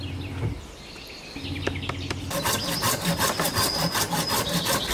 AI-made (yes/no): no